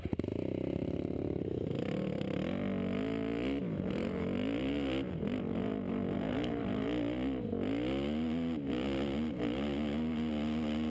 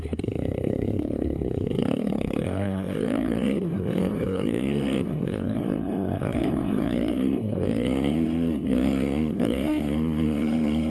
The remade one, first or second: second